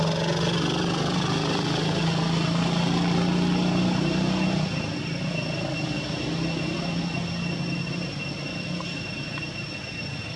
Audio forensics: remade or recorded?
recorded